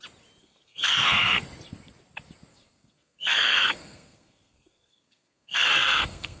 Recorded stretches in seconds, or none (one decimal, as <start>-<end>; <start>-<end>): 0.0-0.4; 1.4-2.5